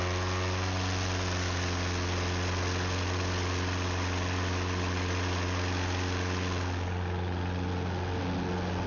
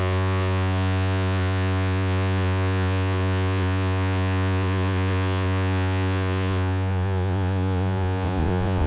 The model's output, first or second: second